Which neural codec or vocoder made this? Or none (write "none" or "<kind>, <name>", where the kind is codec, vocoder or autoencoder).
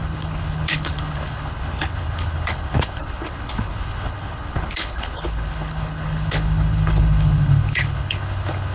codec, HILCodec